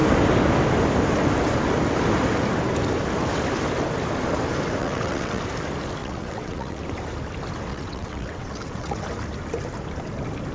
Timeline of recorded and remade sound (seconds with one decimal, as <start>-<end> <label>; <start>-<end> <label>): 0.0-4.8 recorded; 4.8-5.4 remade; 5.4-6.0 recorded; 6.0-6.8 remade; 6.8-7.7 recorded; 7.7-9.0 remade; 9.0-10.5 recorded